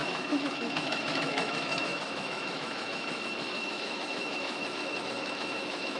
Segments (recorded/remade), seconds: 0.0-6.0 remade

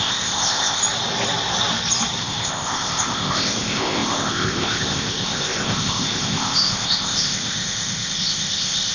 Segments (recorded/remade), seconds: 0.0-0.8 remade; 0.8-2.2 recorded; 2.2-8.9 remade